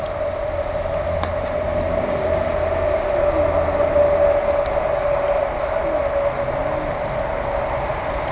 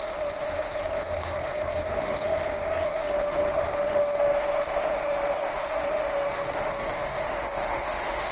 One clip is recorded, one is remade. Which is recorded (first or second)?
first